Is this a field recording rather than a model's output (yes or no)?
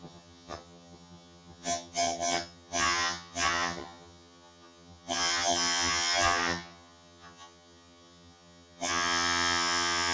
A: no